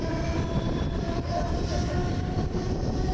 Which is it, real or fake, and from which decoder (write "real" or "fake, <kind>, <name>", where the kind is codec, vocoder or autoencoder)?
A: fake, vocoder, BigVGAN v2